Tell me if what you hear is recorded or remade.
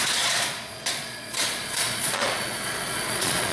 remade